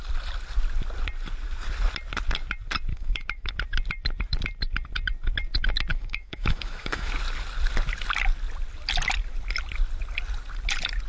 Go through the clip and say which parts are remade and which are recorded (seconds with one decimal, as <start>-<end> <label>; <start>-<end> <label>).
0.0-2.9 recorded; 2.9-3.5 remade; 3.5-5.9 recorded; 5.9-7.1 remade; 7.1-11.1 recorded